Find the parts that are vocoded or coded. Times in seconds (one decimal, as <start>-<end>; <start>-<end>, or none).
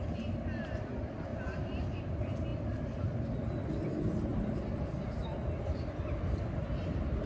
none